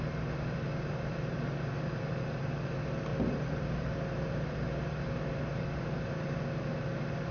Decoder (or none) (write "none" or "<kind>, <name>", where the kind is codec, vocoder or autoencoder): vocoder, BigVGAN v2